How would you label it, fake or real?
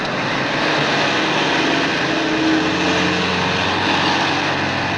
real